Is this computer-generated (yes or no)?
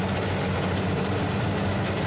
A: no